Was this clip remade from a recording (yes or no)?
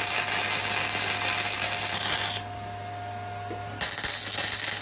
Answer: no